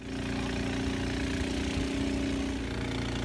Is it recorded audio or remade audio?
recorded